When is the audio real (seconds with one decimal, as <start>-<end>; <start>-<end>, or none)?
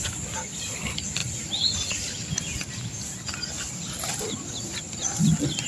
0.0-5.7